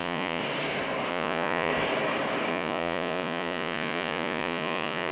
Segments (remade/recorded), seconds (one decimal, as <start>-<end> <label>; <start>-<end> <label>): 0.0-0.4 remade; 0.4-1.1 recorded; 1.1-1.7 remade; 1.7-2.5 recorded; 2.5-5.1 remade